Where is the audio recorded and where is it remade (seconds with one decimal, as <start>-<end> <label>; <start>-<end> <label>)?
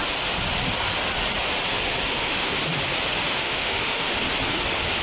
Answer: 0.0-2.1 recorded; 2.1-2.6 remade; 2.6-3.3 recorded; 3.3-4.3 remade; 4.3-5.0 recorded